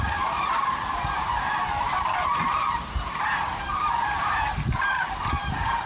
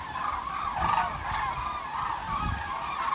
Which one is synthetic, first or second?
first